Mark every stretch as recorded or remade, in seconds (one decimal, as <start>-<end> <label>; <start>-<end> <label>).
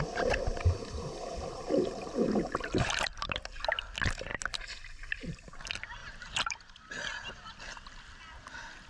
0.0-0.5 recorded; 0.5-2.6 remade; 2.6-6.0 recorded; 6.0-7.5 remade; 7.5-8.9 recorded